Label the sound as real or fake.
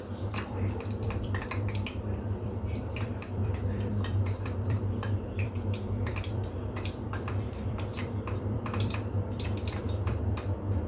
fake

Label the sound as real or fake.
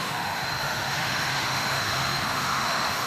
fake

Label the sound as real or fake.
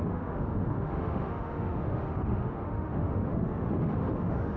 fake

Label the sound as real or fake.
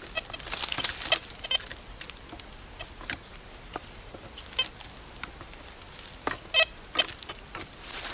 real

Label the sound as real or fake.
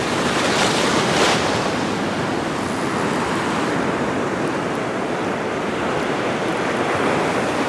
real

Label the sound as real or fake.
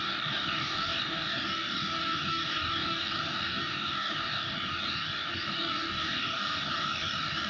fake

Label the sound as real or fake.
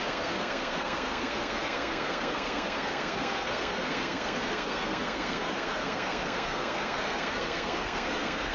fake